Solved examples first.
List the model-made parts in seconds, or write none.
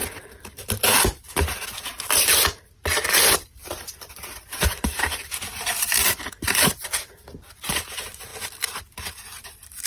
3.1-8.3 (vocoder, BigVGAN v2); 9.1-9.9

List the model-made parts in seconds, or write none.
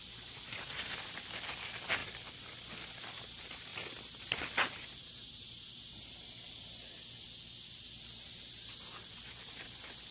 none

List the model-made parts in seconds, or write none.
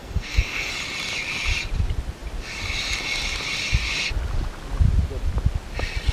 0.0-0.7 (codec, SNAC)